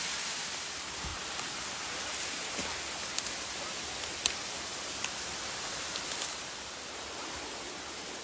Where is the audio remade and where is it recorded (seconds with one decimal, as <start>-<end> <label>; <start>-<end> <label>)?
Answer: 0.0-8.2 recorded